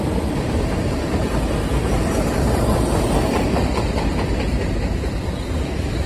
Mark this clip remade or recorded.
remade